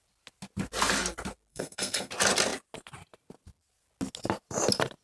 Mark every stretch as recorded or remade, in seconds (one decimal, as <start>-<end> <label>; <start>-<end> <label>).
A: 0.0-1.5 recorded; 1.5-2.1 remade; 2.1-5.0 recorded